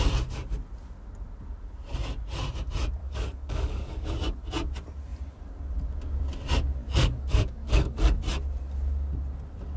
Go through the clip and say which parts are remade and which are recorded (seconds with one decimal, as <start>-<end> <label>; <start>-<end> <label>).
0.0-3.0 recorded; 3.0-4.1 remade; 4.1-6.8 recorded; 6.8-8.2 remade; 8.2-9.8 recorded